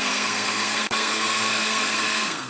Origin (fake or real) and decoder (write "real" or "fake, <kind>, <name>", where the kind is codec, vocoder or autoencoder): fake, codec, SNAC